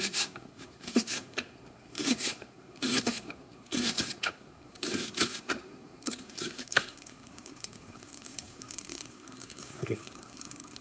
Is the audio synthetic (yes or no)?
yes